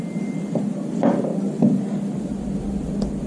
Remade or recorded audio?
recorded